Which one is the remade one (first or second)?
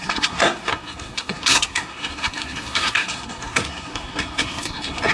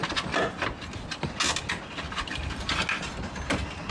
first